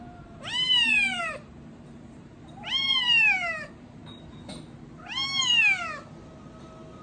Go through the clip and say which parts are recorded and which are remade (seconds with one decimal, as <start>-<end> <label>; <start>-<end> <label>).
0.0-4.0 remade; 4.0-6.6 recorded; 6.6-7.0 remade